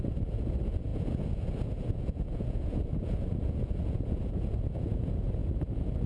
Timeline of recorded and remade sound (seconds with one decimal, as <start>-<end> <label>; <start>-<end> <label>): 0.0-6.1 remade